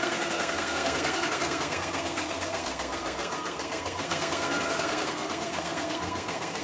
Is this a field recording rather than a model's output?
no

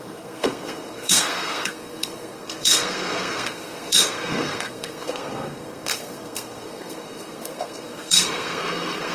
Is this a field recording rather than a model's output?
no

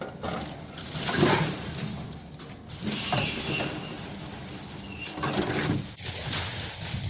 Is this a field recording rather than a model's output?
yes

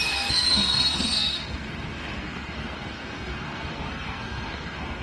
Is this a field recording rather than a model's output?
no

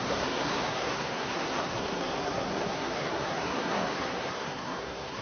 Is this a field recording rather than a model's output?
no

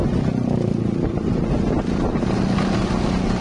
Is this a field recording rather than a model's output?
yes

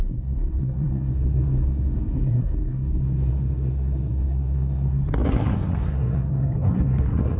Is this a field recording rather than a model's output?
no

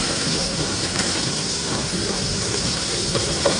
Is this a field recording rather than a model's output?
no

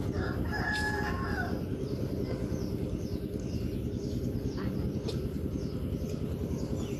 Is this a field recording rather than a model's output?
yes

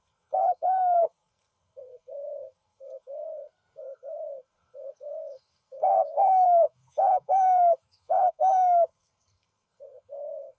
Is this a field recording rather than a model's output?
no